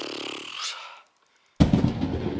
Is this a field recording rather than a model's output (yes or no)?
yes